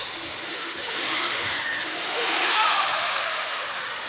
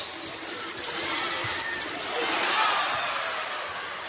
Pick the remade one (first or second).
first